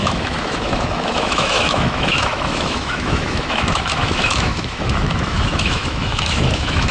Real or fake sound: fake